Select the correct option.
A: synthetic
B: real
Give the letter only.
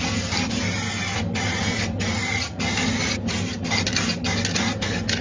B